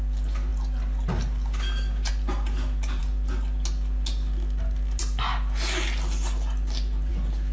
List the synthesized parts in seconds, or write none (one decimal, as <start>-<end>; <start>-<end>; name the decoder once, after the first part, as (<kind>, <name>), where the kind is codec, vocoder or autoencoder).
none